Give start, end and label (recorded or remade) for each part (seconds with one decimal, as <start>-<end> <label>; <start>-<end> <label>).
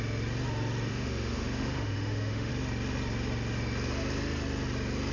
0.0-0.9 recorded; 0.9-2.5 remade; 2.5-5.1 recorded